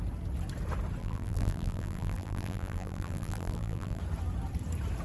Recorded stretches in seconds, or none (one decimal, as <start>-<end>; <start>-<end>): 0.0-1.0; 4.0-5.0